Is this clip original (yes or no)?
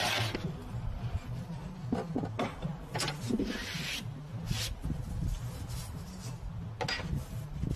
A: yes